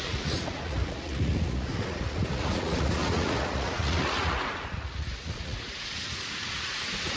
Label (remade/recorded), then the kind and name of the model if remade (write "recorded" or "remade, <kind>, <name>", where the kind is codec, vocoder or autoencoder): remade, vocoder, Vocos